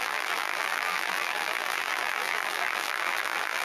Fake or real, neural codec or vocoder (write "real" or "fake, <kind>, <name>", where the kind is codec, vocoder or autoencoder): fake, vocoder, BigVGAN v2